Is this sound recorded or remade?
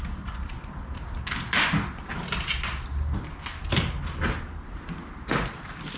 recorded